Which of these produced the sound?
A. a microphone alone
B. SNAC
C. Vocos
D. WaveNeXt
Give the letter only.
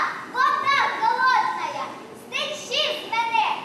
A